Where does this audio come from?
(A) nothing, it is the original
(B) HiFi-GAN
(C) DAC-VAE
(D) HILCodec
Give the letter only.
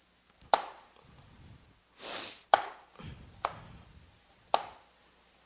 A